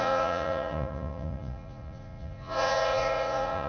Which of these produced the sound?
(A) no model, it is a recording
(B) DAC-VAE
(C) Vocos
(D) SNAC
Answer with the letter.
C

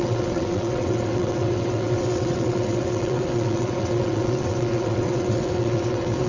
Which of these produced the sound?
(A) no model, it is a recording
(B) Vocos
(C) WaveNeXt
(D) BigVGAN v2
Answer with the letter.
C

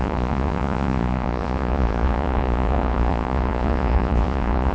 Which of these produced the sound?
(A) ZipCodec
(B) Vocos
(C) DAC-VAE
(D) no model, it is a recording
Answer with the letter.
B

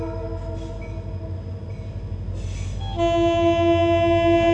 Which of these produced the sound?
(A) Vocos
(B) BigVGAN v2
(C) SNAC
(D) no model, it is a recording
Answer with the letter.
D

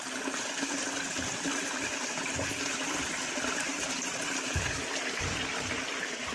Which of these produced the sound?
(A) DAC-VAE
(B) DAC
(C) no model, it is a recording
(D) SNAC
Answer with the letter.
C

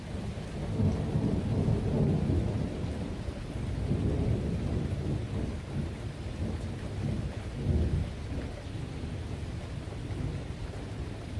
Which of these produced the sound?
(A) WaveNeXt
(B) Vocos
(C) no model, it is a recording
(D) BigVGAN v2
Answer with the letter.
C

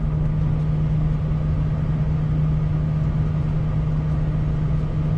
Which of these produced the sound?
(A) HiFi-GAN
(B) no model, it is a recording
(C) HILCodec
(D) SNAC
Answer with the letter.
B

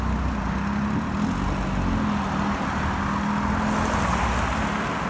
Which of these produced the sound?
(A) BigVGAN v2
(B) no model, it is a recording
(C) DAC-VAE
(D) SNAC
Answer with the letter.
B